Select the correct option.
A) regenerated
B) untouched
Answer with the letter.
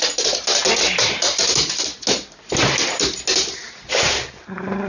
B